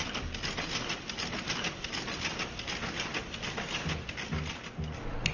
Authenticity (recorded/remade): recorded